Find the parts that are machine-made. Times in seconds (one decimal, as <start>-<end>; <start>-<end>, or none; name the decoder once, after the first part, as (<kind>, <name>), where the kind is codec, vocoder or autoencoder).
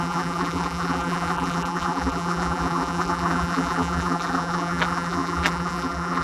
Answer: 0.0-6.2 (vocoder, BigVGAN v2)